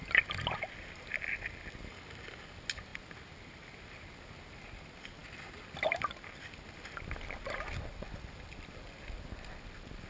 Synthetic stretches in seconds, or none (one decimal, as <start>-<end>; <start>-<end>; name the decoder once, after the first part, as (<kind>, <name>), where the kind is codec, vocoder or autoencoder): none